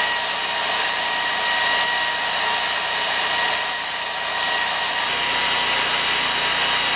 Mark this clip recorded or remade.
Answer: recorded